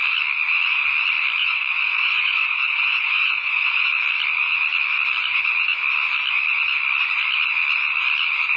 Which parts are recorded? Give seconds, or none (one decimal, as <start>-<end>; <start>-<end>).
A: 0.0-1.4; 3.9-8.6